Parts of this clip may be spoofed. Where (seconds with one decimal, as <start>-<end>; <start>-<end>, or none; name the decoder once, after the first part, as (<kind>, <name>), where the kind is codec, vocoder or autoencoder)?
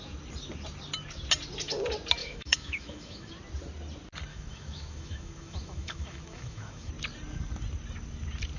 2.2-3.3 (autoencoder, DAC-VAE); 4.3-6.9